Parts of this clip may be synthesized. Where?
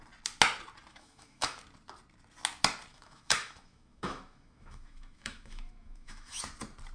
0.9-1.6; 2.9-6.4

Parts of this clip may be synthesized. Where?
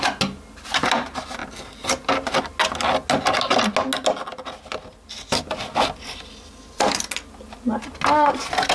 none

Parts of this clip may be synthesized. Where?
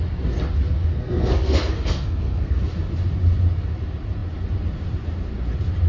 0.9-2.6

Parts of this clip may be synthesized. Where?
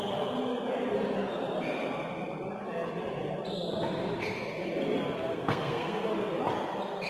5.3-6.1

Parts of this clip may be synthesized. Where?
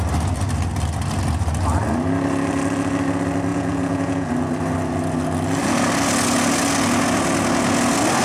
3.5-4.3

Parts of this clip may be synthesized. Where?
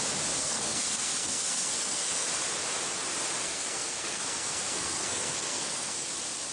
0.4-2.3; 3.4-6.1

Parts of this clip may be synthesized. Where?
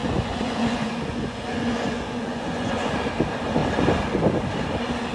0.0-3.1